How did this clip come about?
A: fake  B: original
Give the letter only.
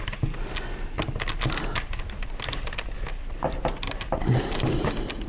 B